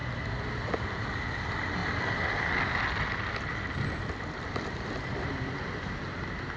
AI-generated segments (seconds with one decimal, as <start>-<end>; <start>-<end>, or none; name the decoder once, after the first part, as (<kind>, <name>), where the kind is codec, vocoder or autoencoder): none